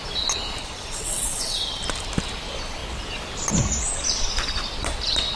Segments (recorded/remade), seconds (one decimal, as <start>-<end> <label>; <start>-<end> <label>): 0.0-0.6 recorded; 0.6-1.8 remade; 1.8-5.4 recorded